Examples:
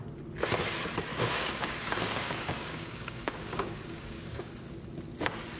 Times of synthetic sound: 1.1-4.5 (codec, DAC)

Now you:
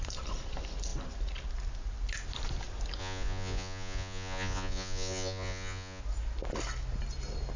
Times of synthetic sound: 3.0-6.0 (vocoder, Vocos)

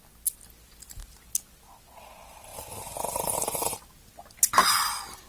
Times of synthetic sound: none

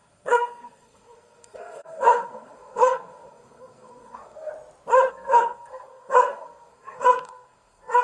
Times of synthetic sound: 0.0-4.5 (codec, SNAC); 5.1-8.0